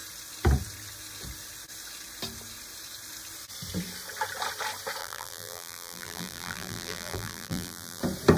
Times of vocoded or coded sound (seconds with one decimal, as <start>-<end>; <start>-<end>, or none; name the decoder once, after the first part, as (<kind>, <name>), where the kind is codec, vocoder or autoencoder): 5.0-8.0 (vocoder, BigVGAN v2)